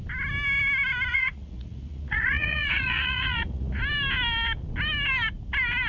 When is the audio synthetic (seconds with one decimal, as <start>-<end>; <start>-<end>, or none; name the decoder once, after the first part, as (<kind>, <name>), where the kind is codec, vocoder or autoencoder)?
1.1-3.8 (vocoder, Vocos)